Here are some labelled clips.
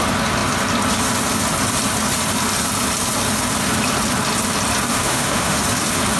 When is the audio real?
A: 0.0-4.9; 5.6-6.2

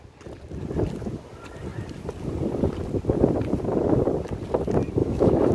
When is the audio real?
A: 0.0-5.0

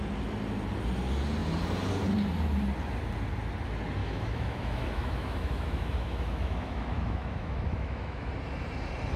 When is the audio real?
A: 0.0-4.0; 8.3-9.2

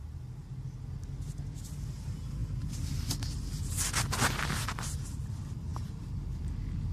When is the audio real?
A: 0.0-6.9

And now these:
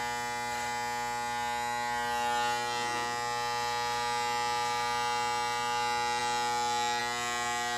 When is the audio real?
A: 0.0-7.8

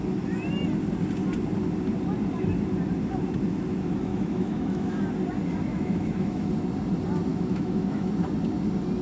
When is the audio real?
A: 0.0-4.1; 5.1-5.7; 6.5-7.3; 8.1-9.0